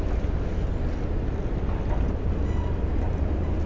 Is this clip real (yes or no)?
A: yes